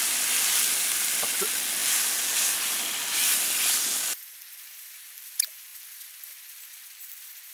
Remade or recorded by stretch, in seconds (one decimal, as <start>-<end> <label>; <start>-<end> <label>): 0.0-7.5 recorded

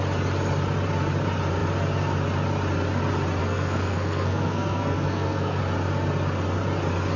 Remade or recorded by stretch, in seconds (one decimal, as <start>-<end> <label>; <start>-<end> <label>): 0.0-3.4 recorded; 3.4-5.6 remade; 5.6-7.2 recorded

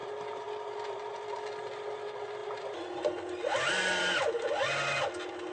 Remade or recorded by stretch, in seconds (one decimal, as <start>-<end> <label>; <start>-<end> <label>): 0.0-5.5 recorded

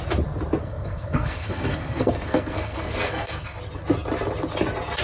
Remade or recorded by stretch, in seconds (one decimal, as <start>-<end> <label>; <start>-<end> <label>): 0.0-0.6 recorded; 0.6-3.6 remade; 3.6-5.0 recorded

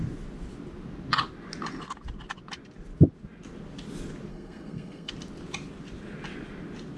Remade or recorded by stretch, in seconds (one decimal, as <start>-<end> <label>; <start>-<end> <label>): 0.0-4.3 recorded; 4.3-5.1 remade; 5.1-7.0 recorded

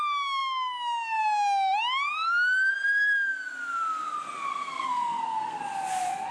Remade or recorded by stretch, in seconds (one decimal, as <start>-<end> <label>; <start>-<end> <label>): 0.0-4.5 recorded; 4.5-5.6 remade; 5.6-6.3 recorded

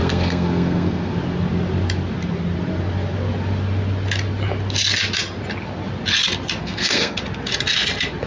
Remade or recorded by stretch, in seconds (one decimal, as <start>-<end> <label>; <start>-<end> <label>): 0.0-1.1 remade; 1.1-6.6 recorded; 6.6-7.2 remade; 7.2-8.3 recorded